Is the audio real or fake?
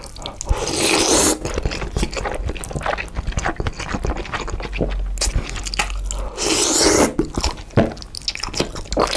real